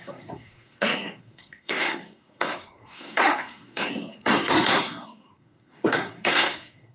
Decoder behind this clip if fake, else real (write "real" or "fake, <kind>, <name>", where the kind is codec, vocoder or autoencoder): fake, codec, SNAC